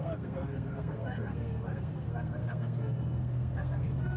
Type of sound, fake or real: fake